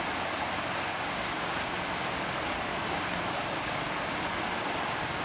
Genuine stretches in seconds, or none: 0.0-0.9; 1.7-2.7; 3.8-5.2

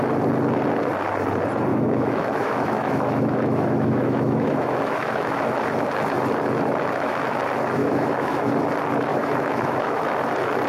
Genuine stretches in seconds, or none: 0.0-1.7; 5.4-7.8; 8.5-9.1; 10.0-10.7

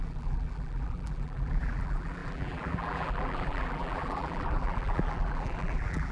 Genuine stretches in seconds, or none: none

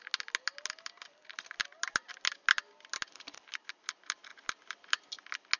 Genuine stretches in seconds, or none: 0.0-5.6